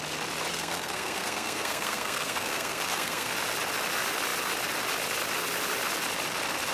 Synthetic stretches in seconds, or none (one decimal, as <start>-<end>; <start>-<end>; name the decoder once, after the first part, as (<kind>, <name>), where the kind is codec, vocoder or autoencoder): 0.5-3.3 (codec, SNAC)